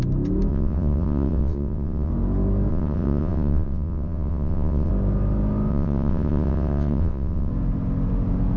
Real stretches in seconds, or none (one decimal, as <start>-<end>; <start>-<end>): 0.0-0.5; 2.1-2.7; 4.9-5.7; 7.5-8.6

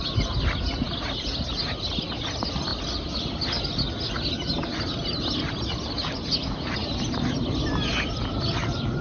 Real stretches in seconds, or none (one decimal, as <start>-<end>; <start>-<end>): 0.0-9.0

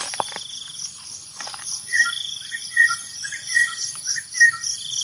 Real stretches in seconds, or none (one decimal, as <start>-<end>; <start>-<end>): 0.0-1.2; 4.1-5.0

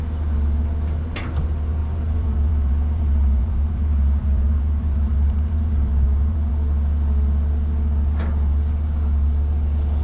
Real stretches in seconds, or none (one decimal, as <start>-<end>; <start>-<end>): 0.0-1.8; 6.5-10.0

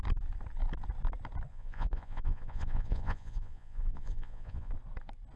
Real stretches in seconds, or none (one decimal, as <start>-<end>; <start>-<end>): 0.0-1.5; 4.7-5.4

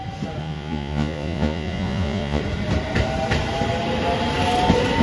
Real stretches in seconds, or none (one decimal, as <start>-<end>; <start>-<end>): 0.0-0.4; 2.4-5.0

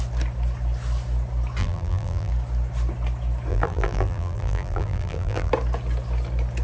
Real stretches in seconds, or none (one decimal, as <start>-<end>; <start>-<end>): 0.0-1.6; 2.3-3.5; 5.5-6.6

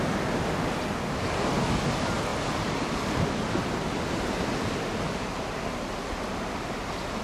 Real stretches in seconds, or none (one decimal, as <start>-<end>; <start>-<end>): 0.0-7.2